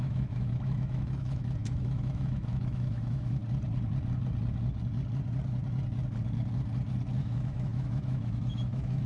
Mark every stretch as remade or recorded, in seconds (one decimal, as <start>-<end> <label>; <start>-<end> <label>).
0.0-3.4 remade; 3.4-7.2 recorded; 7.2-9.1 remade